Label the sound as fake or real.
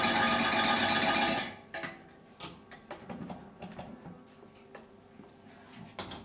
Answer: real